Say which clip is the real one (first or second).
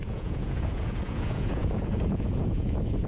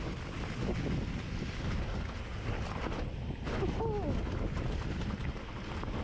second